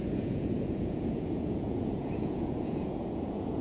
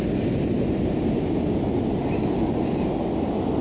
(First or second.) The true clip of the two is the second